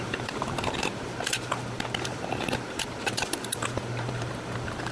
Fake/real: fake